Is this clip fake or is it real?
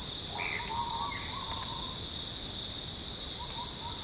real